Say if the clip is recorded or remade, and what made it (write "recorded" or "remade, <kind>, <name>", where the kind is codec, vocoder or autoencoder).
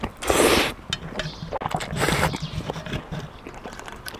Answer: recorded